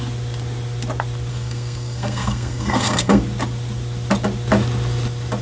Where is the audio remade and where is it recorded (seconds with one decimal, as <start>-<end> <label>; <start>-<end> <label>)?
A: 0.0-1.3 recorded; 1.3-3.2 remade; 3.2-5.4 recorded